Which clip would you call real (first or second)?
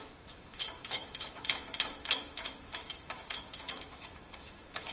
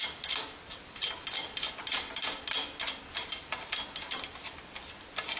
second